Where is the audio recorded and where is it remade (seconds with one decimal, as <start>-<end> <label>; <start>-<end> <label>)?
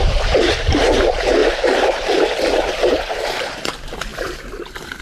0.0-1.4 remade; 1.4-2.6 recorded; 2.6-5.0 remade